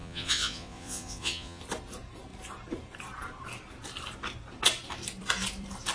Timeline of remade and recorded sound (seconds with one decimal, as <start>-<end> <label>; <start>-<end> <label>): 0.0-1.6 remade; 1.6-5.9 recorded